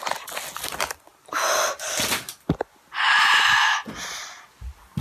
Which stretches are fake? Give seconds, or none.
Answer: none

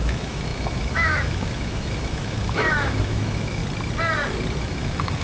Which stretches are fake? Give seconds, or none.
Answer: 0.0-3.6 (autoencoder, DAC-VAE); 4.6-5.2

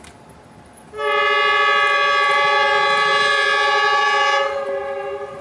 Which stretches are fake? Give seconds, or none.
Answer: none

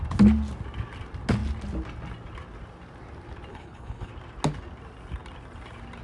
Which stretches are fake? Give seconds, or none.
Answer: 3.5-4.1 (codec, HILCodec)

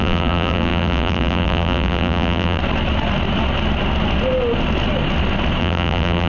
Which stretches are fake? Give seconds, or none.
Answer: 0.0-2.6 (vocoder, BigVGAN v2); 5.6-6.3